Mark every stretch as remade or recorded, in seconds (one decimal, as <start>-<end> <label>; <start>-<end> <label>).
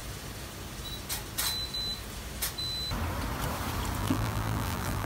0.0-4.0 recorded; 4.0-5.1 remade